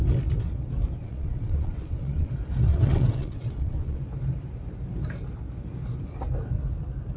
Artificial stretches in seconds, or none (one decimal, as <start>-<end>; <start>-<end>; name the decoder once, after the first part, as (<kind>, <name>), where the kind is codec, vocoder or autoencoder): 1.0-2.3 (vocoder, WaveNeXt); 2.7-4.0